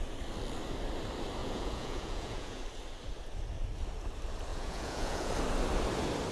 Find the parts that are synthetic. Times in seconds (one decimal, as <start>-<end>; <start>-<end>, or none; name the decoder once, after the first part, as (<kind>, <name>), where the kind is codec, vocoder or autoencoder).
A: 1.4-2.6 (vocoder, Vocos); 4.5-5.3